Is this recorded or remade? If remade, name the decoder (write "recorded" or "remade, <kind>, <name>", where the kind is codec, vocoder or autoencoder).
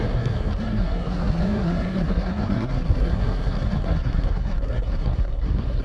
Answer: remade, codec, SNAC